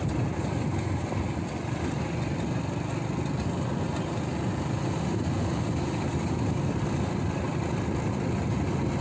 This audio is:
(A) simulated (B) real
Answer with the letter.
B